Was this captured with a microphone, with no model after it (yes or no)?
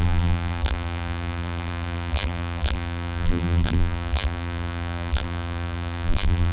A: no